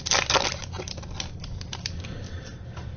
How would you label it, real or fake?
fake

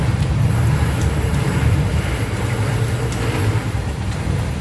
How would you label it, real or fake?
fake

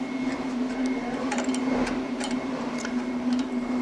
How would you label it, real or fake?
fake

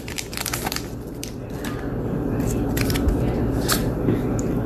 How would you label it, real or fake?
fake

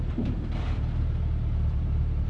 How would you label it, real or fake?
fake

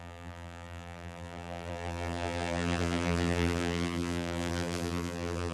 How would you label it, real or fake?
fake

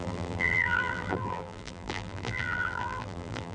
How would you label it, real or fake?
fake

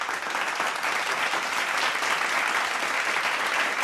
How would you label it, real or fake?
real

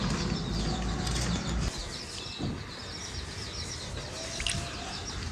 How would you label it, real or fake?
real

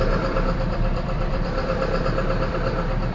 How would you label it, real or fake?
fake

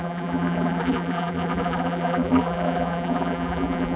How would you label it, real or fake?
fake